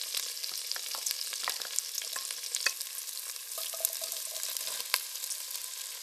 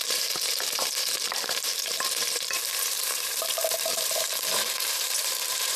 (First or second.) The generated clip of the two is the second